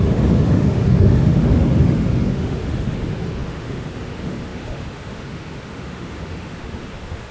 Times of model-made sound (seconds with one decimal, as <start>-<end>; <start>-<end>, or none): 0.0-7.3